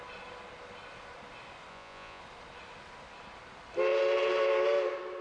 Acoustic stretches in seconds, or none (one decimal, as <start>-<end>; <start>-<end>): 0.0-1.7; 2.2-5.2